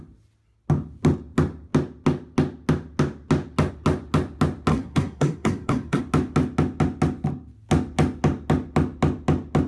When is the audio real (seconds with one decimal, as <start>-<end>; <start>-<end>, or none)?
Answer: 0.0-4.7; 6.0-9.7